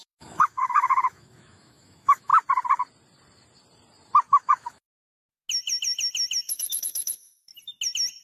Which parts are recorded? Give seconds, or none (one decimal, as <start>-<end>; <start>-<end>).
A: 2.3-4.3; 4.9-6.4; 7.5-8.2